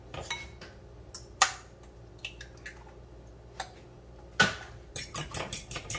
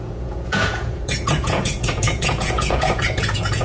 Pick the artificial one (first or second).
second